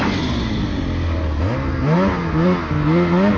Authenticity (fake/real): real